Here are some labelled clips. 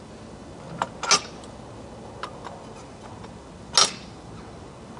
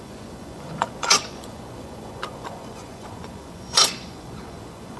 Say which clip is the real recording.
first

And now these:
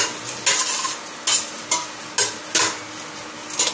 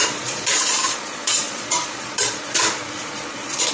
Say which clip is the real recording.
first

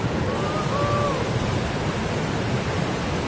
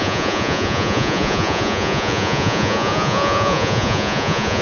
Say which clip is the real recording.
first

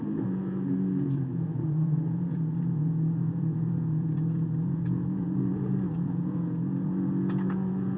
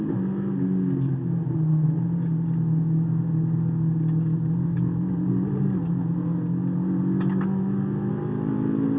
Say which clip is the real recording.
second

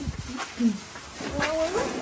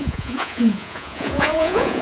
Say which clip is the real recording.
first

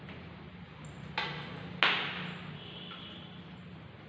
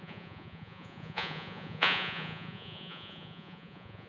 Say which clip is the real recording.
first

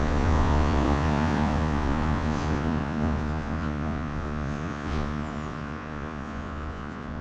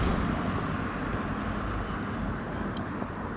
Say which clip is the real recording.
second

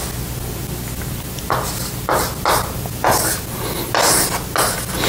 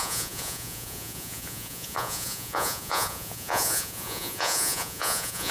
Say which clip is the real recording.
first